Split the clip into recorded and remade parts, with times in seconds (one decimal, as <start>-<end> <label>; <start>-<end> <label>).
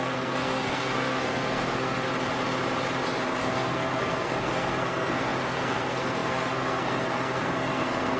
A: 0.0-2.1 remade; 2.1-3.4 recorded; 3.4-8.2 remade